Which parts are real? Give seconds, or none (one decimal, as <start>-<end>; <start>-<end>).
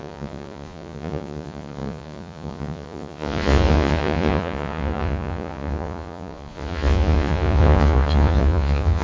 none